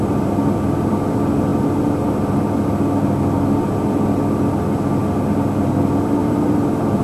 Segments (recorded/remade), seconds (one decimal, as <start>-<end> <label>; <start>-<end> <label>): 0.0-6.2 recorded; 6.2-7.0 remade